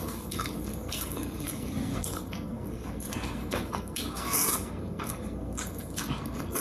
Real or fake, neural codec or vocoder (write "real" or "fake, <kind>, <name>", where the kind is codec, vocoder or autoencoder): fake, codec, SNAC